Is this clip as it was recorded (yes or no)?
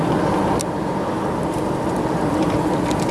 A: yes